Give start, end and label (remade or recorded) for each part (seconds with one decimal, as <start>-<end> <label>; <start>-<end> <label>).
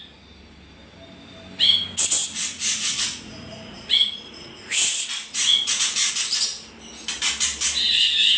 0.0-2.2 recorded; 2.2-6.1 remade; 6.1-8.4 recorded